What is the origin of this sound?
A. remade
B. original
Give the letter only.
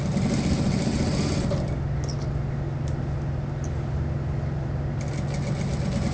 B